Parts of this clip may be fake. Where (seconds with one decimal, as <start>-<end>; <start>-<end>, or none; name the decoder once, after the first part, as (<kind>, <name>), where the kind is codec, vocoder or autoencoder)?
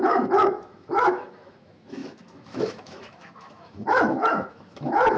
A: 0.0-5.2 (autoencoder, DAC-VAE)